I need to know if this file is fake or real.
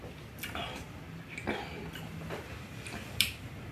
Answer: real